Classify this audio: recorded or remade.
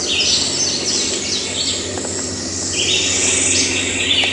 recorded